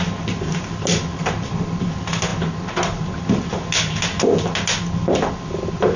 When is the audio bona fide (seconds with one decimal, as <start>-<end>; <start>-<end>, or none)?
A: 0.0-6.0